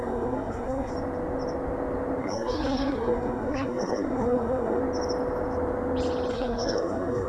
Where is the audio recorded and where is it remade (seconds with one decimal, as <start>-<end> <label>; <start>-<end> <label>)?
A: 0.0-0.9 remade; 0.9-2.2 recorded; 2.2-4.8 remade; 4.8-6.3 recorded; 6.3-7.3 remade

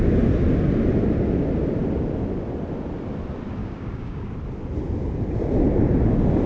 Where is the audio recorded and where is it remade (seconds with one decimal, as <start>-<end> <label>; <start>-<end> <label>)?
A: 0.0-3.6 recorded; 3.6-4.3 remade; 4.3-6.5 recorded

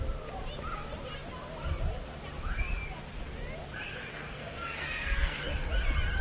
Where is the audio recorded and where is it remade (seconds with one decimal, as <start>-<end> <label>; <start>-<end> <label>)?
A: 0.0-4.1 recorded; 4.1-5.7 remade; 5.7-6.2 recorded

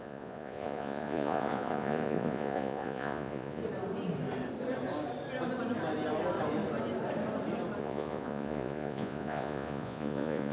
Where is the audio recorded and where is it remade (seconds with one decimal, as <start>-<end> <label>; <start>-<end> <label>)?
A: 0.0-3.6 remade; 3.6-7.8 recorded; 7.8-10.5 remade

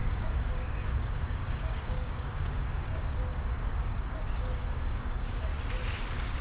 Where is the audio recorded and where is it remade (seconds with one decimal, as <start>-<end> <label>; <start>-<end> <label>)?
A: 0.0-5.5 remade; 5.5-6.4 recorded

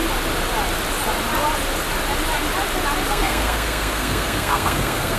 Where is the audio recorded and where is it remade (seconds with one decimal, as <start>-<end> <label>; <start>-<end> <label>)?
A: 0.0-3.1 recorded; 3.1-5.2 remade

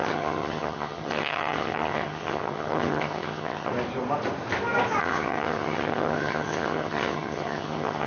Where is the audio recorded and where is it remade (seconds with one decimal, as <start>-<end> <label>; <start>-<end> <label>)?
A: 0.0-3.7 remade; 3.7-5.0 recorded; 5.0-8.1 remade